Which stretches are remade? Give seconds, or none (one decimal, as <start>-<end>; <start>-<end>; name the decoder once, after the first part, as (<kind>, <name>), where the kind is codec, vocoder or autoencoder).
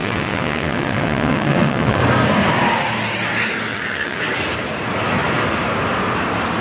0.0-2.0 (vocoder, WaveNeXt); 3.7-4.2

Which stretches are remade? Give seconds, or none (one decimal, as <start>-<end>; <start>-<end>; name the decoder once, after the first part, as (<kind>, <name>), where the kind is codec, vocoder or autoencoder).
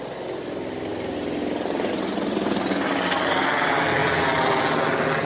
none